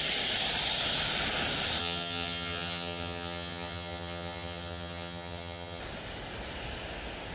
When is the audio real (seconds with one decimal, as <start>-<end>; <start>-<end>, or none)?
0.0-1.8; 5.8-7.3